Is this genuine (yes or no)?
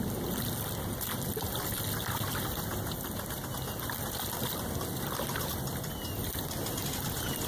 yes